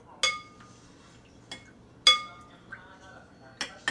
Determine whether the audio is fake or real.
real